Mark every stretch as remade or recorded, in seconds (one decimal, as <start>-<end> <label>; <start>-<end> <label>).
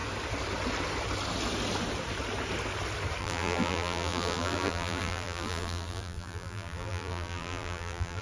0.0-3.2 recorded; 3.2-8.2 remade